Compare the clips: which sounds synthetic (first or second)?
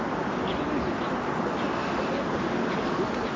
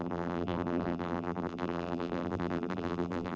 second